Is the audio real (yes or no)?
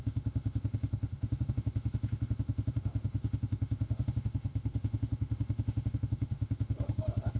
no